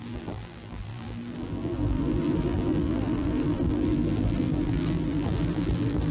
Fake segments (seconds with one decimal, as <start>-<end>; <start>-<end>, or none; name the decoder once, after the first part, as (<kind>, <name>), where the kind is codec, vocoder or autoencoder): 0.0-6.1 (vocoder, BigVGAN v2)